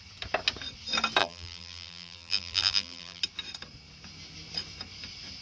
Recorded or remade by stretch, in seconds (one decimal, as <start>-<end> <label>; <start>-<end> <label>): 0.0-1.2 recorded; 1.2-3.2 remade; 3.2-5.4 recorded